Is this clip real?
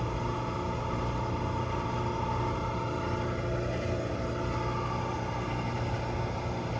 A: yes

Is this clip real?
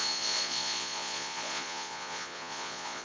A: no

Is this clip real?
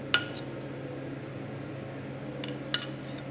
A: yes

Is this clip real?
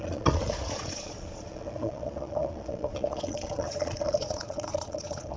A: no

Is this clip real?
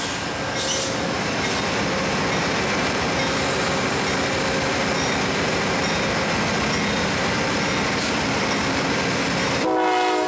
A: yes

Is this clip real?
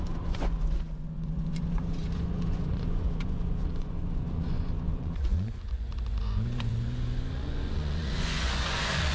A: no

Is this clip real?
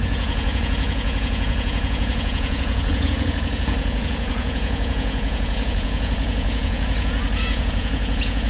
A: no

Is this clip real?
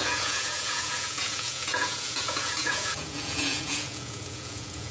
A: no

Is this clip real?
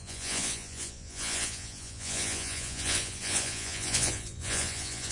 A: no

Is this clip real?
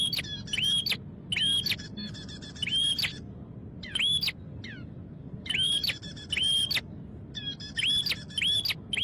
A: yes